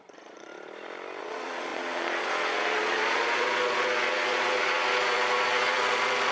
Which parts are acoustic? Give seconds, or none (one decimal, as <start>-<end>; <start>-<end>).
0.5-1.2